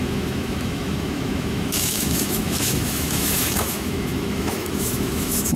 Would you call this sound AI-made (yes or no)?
yes